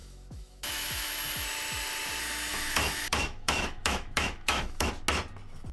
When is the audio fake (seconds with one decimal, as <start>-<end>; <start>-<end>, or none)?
0.0-1.1; 2.5-4.9